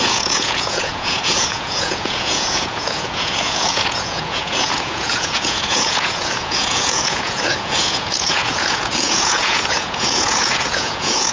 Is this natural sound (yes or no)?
no